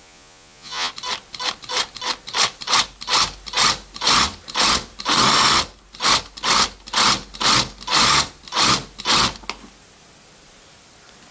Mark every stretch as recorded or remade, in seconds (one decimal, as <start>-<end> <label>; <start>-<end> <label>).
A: 0.0-0.9 remade; 0.9-11.3 recorded

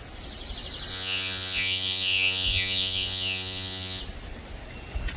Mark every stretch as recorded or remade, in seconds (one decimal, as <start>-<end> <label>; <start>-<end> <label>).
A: 0.0-0.9 recorded; 0.9-4.0 remade; 4.0-5.2 recorded

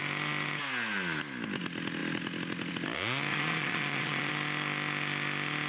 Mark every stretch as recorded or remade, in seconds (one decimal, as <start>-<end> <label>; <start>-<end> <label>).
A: 0.0-3.3 recorded; 3.3-4.3 remade; 4.3-5.7 recorded

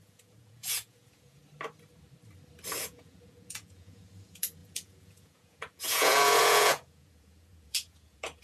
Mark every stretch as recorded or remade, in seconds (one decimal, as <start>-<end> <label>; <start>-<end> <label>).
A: 0.0-1.4 remade; 1.4-2.8 recorded; 2.8-8.4 remade

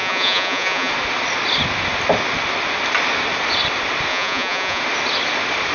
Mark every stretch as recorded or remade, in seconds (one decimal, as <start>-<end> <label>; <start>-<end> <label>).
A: 0.0-0.9 remade; 0.9-4.1 recorded; 4.1-4.8 remade; 4.8-5.7 recorded